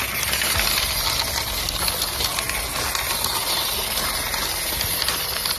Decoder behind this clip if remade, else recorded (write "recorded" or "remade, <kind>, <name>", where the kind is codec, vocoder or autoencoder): recorded